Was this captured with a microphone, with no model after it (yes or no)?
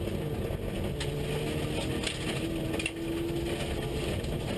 yes